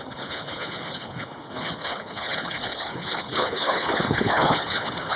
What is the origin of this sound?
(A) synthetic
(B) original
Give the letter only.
A